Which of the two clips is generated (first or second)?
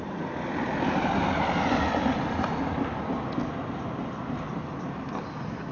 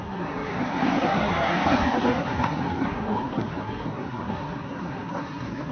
second